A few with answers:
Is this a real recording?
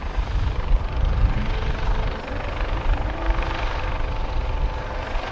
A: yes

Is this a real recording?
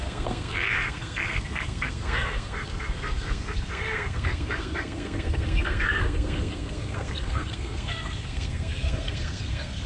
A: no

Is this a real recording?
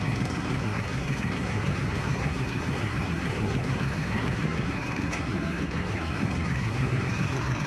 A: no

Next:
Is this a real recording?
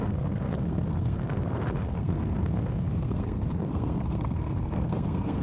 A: no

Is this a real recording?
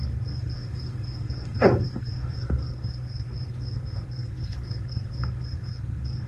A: no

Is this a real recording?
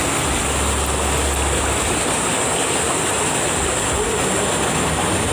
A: yes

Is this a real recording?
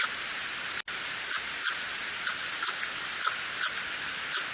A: yes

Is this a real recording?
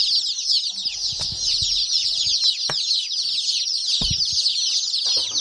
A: yes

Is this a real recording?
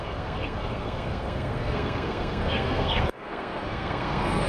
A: no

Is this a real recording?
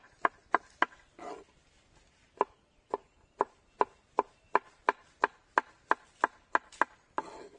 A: yes